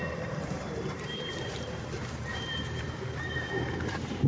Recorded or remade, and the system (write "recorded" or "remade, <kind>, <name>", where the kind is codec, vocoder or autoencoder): remade, vocoder, BigVGAN v2